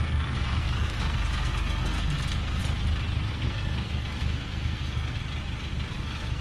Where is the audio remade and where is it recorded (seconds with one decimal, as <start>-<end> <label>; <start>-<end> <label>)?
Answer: 0.0-2.6 remade; 2.6-3.3 recorded; 3.3-5.2 remade; 5.2-5.9 recorded; 5.9-6.4 remade